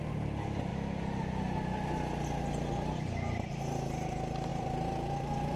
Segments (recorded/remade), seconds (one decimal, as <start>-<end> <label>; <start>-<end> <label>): 0.0-4.5 recorded; 4.5-5.6 remade